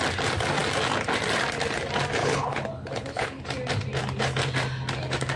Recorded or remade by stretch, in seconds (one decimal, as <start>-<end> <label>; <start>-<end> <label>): 0.0-2.2 recorded; 2.2-3.4 remade; 3.4-5.4 recorded